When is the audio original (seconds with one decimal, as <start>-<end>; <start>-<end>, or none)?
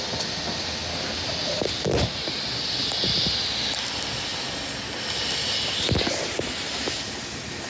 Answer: 0.0-7.7